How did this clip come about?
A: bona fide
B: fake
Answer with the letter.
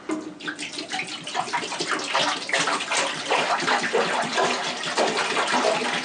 A